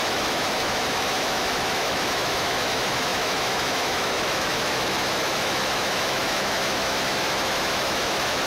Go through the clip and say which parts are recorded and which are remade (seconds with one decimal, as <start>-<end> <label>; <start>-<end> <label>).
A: 0.0-8.5 remade